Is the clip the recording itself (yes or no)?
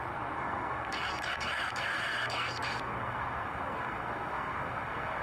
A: no